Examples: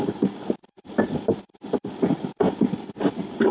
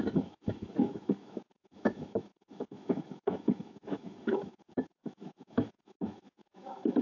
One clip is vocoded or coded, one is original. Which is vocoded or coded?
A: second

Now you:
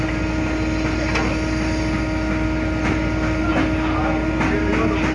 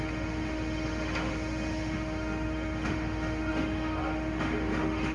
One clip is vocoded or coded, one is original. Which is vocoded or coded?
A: second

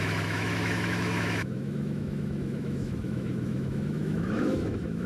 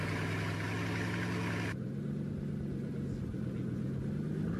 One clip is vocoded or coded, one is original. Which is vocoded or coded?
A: first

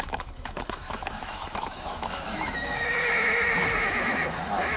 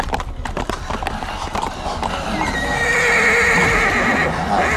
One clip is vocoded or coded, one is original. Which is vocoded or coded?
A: first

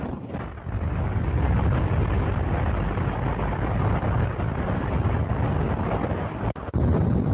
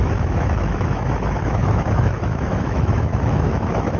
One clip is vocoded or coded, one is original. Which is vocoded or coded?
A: second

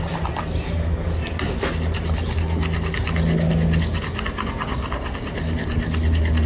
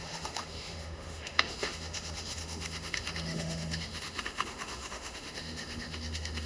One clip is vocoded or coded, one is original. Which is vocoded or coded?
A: second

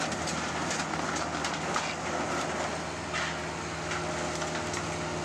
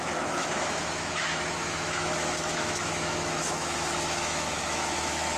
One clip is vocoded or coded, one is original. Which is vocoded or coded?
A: second